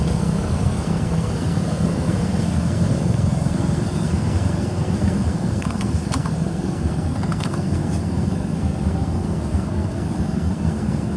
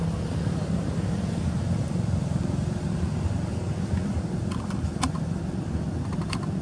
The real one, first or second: second